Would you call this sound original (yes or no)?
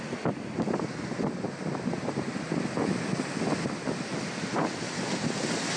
yes